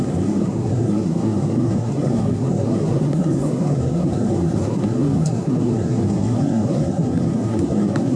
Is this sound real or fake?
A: fake